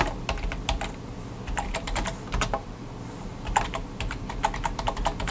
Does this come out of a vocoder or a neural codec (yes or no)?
no